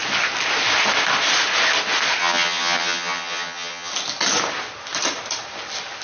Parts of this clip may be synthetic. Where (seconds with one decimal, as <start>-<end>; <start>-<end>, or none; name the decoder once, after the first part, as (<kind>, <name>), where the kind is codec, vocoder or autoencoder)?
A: 2.2-3.9 (vocoder, HiFi-GAN)